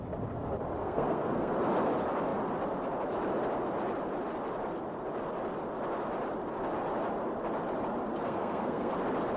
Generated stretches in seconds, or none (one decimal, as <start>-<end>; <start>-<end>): 0.8-1.5; 8.2-8.9